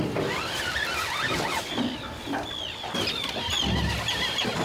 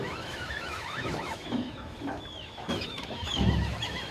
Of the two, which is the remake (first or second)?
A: second